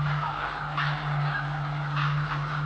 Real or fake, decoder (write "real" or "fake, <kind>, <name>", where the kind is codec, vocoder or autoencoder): fake, codec, DAC